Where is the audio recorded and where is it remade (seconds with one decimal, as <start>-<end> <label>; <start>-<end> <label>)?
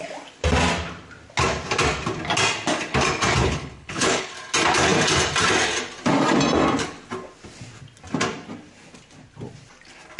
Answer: 0.0-3.4 recorded; 3.4-4.3 remade; 4.3-10.2 recorded